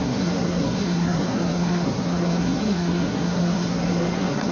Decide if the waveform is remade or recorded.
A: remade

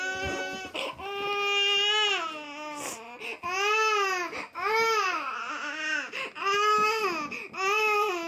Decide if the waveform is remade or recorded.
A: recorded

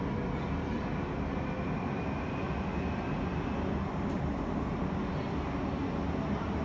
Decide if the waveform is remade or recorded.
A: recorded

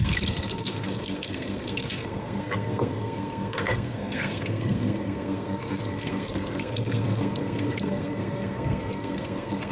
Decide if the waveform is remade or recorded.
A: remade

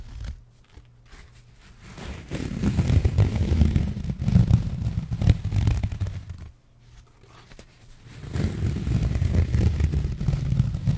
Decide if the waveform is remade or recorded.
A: recorded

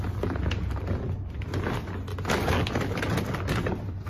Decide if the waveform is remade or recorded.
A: recorded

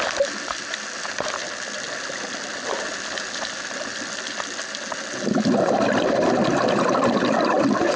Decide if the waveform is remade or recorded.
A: recorded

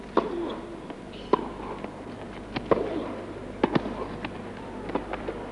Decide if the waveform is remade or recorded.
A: recorded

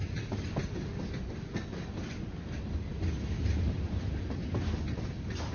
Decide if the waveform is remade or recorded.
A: recorded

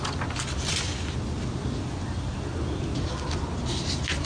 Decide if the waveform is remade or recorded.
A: recorded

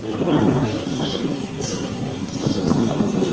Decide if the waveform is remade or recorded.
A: remade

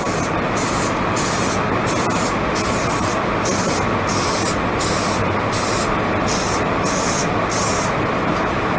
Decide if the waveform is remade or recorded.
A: recorded